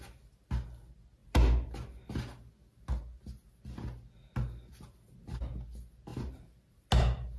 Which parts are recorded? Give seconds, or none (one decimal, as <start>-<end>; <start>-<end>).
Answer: 0.0-7.4